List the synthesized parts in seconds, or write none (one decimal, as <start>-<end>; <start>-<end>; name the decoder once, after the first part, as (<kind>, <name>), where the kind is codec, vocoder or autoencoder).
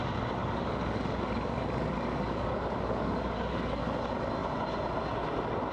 0.4-3.8 (codec, DAC)